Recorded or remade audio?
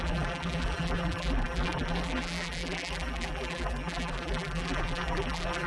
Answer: remade